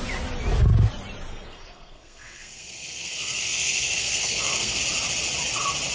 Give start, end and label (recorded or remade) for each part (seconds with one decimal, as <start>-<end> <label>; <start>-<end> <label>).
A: 0.0-1.3 recorded; 1.3-4.8 remade; 4.8-5.9 recorded